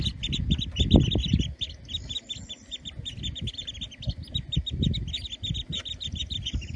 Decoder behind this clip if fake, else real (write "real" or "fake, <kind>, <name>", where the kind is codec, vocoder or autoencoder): real